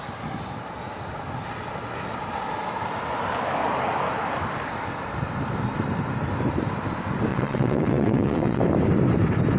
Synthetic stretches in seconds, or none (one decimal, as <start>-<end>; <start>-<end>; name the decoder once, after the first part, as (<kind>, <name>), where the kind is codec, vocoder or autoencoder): 7.3-8.6 (vocoder, WaveNeXt)